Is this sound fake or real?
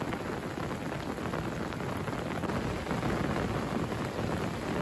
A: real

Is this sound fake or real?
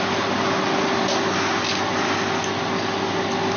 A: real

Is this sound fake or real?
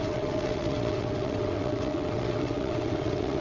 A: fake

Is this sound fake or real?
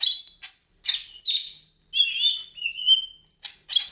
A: real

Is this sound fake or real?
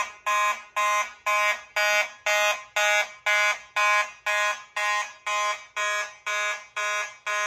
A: real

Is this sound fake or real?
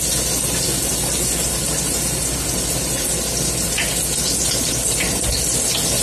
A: real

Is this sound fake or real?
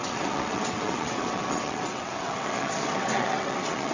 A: fake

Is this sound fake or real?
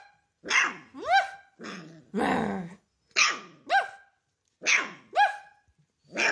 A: real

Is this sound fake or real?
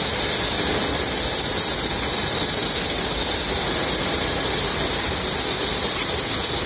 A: real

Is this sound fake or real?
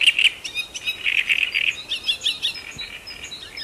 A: real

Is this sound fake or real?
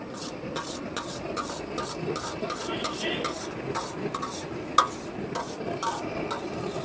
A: real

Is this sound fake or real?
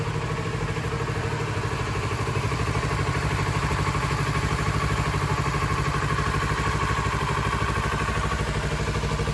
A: real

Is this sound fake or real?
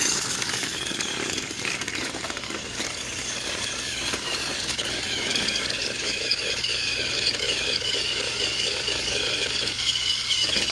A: fake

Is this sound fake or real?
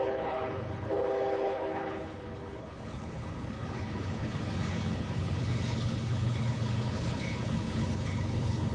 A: fake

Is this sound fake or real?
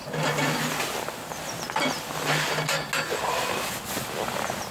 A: real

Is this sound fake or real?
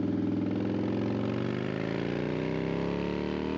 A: real